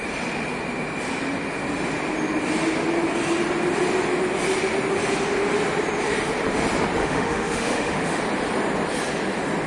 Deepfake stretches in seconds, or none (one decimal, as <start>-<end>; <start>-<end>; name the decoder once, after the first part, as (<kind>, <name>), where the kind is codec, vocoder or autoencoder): 7.0-8.2 (autoencoder, DAC-VAE)